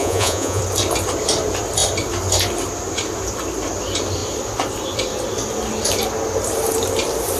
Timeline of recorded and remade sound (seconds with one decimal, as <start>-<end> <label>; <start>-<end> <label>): 0.0-0.6 remade; 0.6-7.4 recorded